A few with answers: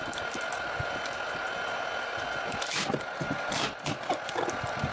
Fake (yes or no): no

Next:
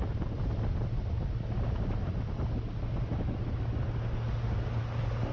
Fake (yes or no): no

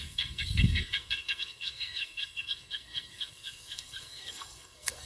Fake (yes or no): yes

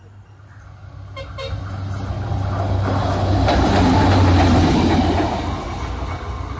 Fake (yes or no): no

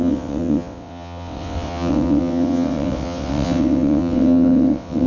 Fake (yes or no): yes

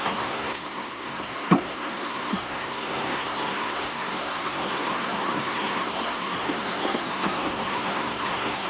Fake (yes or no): yes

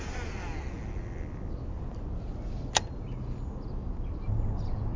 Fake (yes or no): no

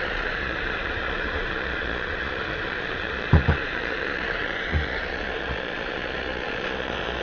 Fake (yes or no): yes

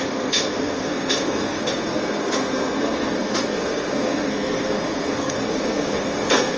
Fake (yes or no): yes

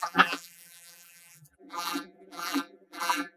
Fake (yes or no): yes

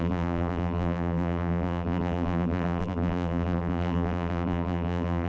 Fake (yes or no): yes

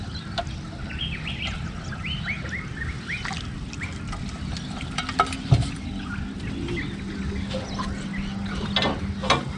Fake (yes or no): no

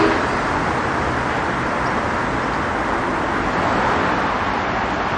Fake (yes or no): no